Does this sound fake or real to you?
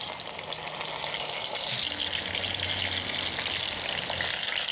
real